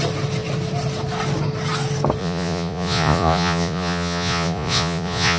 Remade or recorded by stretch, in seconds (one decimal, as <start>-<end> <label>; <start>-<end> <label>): 0.0-2.2 recorded; 2.2-5.4 remade